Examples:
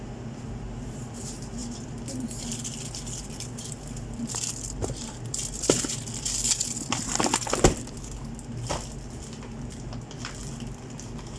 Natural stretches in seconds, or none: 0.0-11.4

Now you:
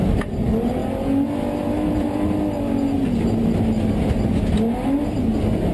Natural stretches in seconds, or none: 0.0-5.7

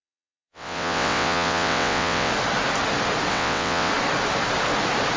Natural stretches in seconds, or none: 2.3-3.3; 3.9-5.2

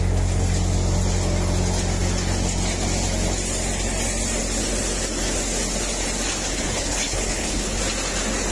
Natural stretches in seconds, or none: 0.0-6.5; 7.8-8.5

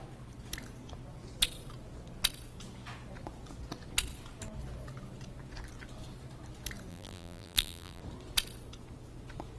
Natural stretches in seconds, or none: 0.0-6.9; 8.0-9.6